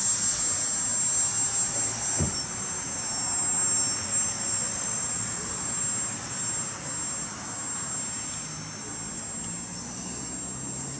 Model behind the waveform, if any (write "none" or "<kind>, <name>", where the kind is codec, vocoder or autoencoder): none